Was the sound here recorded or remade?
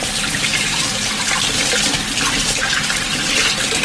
recorded